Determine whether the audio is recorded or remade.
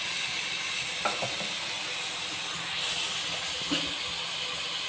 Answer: recorded